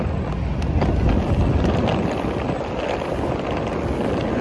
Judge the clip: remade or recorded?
recorded